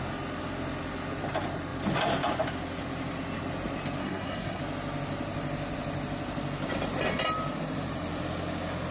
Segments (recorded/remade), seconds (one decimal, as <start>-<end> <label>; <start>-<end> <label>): 0.0-4.0 recorded; 4.0-4.6 remade; 4.6-8.9 recorded